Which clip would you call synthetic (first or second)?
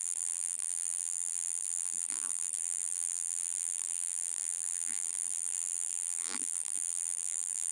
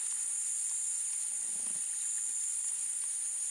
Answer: first